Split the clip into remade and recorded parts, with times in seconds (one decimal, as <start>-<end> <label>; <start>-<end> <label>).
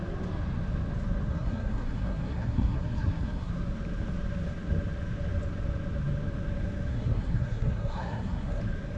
0.0-1.3 recorded; 1.3-3.5 remade; 3.5-6.9 recorded; 6.9-8.6 remade; 8.6-9.0 recorded